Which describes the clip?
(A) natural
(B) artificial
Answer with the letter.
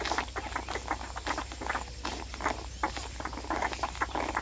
A